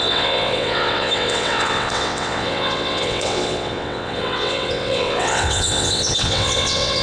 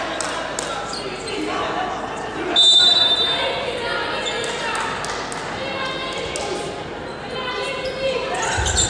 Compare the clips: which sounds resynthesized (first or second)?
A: first